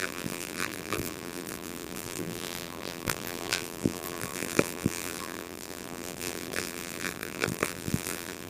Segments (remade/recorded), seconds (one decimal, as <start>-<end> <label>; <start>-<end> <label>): 0.0-8.5 remade